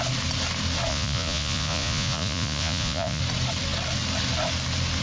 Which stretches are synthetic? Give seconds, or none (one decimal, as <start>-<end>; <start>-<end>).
0.9-3.2